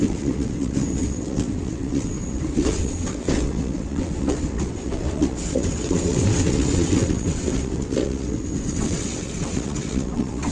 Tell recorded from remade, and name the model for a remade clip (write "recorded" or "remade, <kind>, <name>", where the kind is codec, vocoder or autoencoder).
remade, vocoder, WaveNeXt